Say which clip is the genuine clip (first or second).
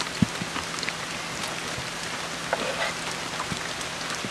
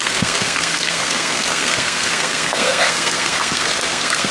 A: first